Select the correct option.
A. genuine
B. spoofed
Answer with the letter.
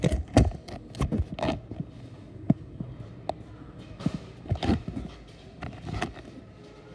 A